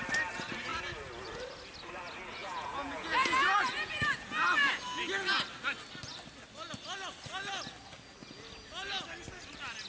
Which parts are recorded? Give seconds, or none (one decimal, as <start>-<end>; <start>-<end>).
0.0-2.4; 4.7-9.9